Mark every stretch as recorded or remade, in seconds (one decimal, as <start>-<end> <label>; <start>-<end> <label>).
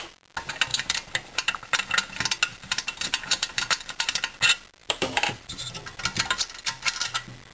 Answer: 0.0-0.7 recorded; 0.7-1.9 remade; 1.9-2.5 recorded; 2.5-4.2 remade; 4.2-4.8 recorded; 4.8-5.6 remade; 5.6-7.5 recorded